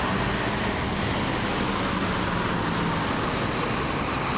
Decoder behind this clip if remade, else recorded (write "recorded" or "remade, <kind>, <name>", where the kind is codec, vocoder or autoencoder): recorded